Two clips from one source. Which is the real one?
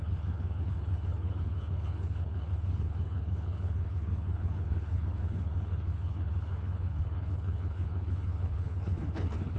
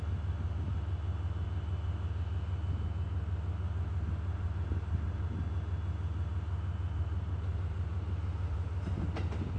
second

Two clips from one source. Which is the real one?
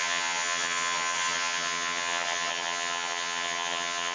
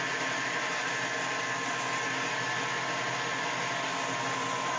second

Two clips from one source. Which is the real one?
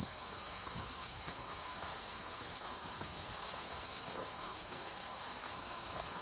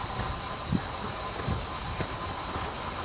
second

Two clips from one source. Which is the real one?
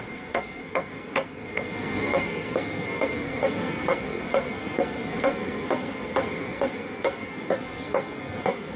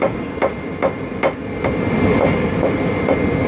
second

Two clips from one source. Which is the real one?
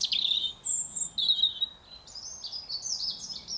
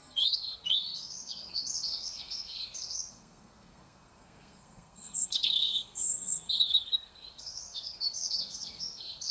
first